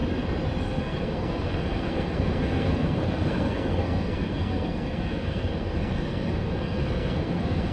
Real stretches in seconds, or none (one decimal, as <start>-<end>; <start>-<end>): 0.0-0.6